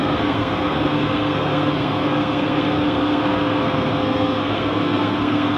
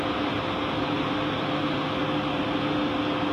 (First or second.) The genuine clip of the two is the second